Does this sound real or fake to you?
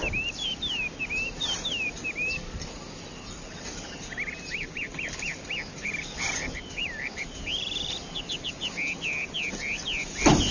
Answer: real